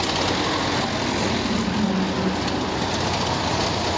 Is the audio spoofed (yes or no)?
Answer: no